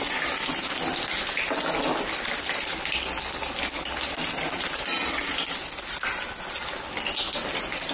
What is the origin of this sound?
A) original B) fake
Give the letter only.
A